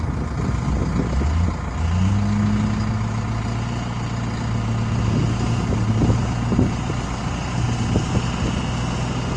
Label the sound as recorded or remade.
recorded